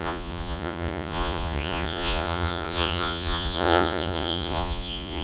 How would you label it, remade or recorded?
remade